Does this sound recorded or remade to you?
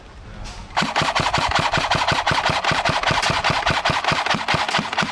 recorded